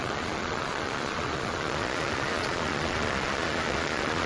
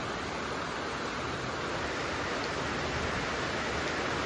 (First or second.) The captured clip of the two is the second